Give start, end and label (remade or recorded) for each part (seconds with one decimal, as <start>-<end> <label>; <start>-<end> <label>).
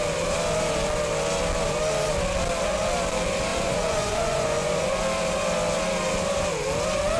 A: 0.0-3.5 recorded; 3.5-5.0 remade; 5.0-7.2 recorded